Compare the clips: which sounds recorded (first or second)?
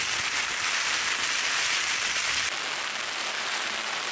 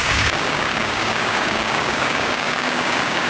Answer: first